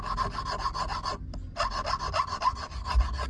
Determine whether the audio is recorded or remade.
recorded